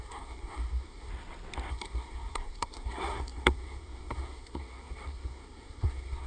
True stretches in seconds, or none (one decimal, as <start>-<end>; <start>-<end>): 1.1-1.7